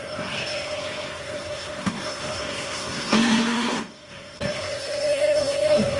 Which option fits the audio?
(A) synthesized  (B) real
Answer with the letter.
A